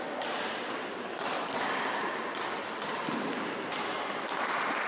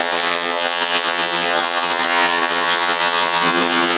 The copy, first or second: second